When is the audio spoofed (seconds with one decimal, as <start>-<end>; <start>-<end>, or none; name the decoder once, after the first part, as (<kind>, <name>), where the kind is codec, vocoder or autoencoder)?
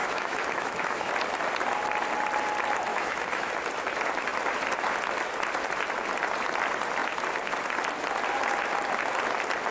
0.0-1.1 (autoencoder, DAC-VAE); 2.9-3.5